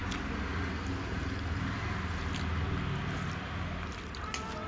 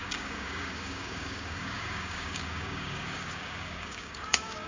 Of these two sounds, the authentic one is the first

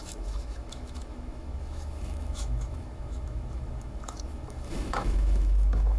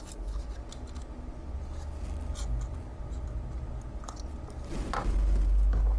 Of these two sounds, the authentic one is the second